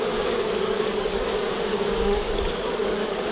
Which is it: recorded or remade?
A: remade